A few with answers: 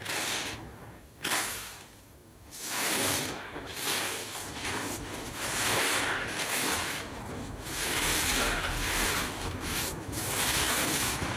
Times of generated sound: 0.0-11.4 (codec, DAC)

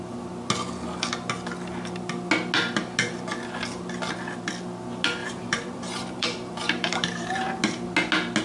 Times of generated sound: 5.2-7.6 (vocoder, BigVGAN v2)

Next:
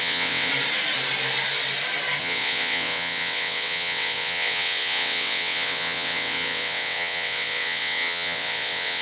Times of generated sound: 0.0-0.5 (vocoder, WaveNeXt); 2.2-9.0

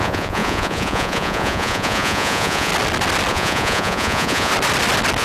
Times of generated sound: 0.0-2.7 (vocoder, Vocos); 3.3-4.5

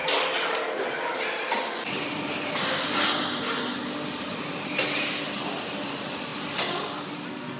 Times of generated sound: none